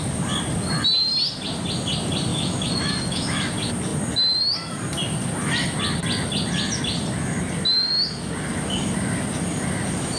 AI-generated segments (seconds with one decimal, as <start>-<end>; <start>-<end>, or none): 2.3-3.5